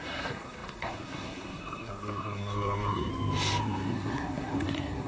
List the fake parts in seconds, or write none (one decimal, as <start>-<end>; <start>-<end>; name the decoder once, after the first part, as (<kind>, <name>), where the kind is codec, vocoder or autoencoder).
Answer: 0.0-3.1 (codec, SNAC); 3.6-5.1